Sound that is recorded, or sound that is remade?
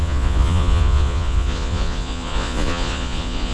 remade